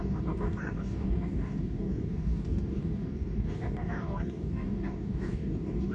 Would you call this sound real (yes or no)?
no